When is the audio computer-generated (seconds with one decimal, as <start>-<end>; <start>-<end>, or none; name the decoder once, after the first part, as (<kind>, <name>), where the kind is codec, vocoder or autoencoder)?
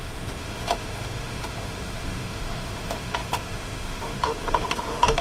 0.0-5.2 (autoencoder, DAC-VAE)